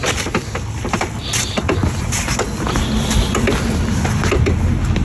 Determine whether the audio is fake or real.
real